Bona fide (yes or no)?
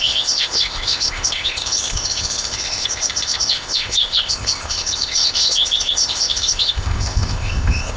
no